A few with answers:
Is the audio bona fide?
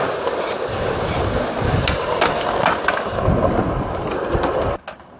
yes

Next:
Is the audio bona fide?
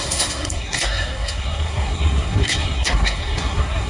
no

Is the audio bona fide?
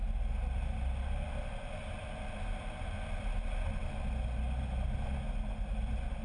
yes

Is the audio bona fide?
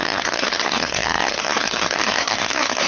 no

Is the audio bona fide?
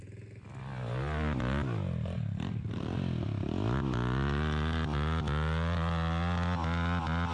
yes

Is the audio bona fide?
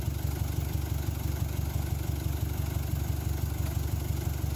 yes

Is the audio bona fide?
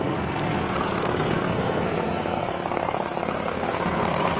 no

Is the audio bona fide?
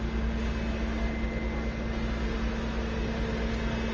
yes